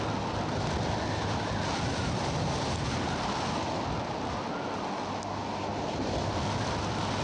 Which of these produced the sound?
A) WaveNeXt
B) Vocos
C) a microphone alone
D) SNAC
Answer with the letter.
C